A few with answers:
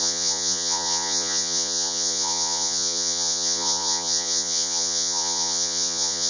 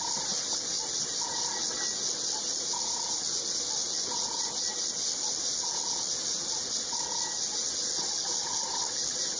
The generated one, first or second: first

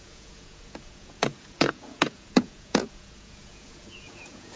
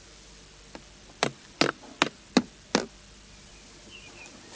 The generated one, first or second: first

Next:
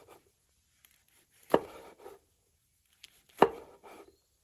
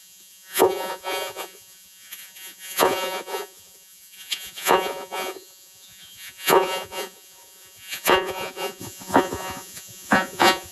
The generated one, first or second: second